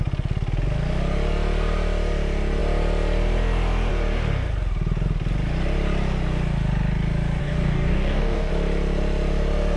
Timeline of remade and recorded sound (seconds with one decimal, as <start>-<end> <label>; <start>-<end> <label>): 0.0-7.4 recorded; 7.4-8.5 remade; 8.5-9.8 recorded